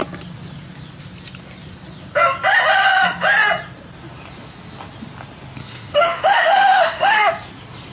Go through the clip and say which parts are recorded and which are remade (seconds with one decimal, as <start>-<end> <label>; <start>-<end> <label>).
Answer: 0.0-5.6 recorded; 5.6-7.3 remade; 7.3-7.9 recorded